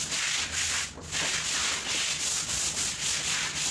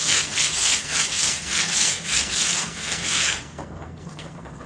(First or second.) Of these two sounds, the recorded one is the first